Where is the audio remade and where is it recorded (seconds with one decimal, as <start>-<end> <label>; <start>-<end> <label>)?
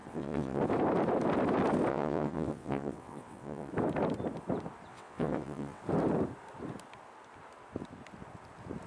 0.0-0.6 remade; 0.6-1.9 recorded; 1.9-3.7 remade; 3.7-4.9 recorded; 4.9-5.8 remade; 5.8-8.9 recorded